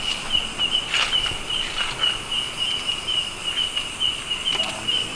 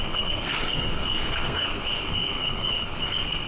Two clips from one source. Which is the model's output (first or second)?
second